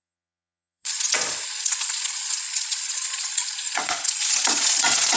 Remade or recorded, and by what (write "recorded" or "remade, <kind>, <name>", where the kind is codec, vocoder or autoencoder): remade, vocoder, Vocos